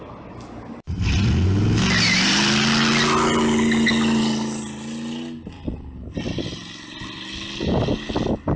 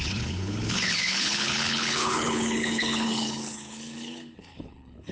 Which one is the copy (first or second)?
second